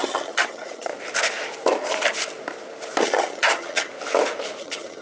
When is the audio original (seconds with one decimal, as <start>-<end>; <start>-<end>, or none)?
0.9-3.0; 3.9-4.6